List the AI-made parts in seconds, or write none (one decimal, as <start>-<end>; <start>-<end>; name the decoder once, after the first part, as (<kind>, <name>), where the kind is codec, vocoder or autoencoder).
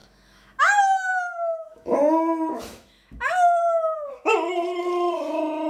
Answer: 0.0-0.6 (autoencoder, DAC-VAE); 1.1-4.5